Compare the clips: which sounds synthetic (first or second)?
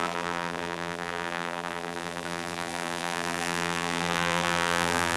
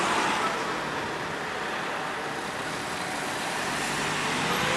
first